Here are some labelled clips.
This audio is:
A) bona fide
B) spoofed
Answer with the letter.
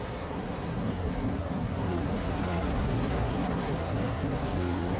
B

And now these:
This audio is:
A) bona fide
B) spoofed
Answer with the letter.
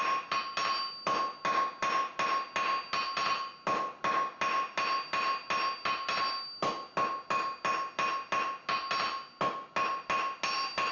A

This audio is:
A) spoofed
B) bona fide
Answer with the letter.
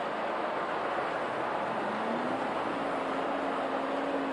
B